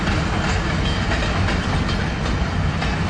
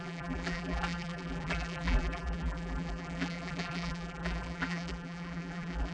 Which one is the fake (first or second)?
second